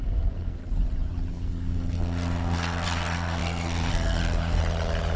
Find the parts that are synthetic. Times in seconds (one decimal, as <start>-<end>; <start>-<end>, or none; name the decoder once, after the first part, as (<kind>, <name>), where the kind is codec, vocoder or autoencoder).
0.0-0.6 (codec, SNAC); 1.3-4.6

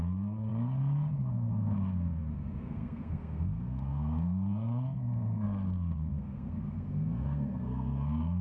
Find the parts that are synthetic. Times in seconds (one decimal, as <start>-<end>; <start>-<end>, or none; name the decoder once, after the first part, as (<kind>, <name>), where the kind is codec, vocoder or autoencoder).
0.0-0.5 (codec, SNAC); 1.3-8.4

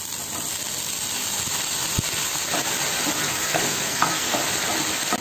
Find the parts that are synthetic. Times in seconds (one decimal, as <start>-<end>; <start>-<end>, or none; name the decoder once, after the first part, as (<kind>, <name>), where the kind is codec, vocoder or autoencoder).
3.2-4.4 (codec, SNAC)

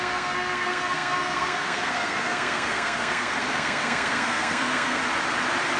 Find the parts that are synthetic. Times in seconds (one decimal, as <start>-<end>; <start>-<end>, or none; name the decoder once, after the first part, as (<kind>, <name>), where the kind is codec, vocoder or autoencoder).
0.0-5.0 (codec, SNAC)